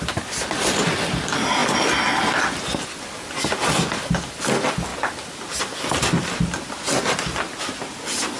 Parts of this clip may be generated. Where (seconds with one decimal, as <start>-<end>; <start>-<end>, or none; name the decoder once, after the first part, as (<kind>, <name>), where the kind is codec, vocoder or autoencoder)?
none